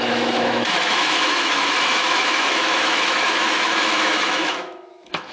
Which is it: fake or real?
fake